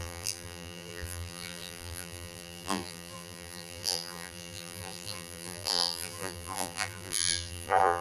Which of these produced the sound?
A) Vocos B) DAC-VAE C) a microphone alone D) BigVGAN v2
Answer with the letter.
D